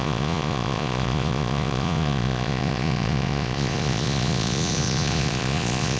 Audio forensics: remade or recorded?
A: remade